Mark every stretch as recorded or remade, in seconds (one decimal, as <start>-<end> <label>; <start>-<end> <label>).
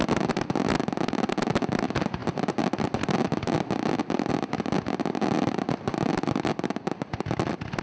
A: 0.0-7.8 recorded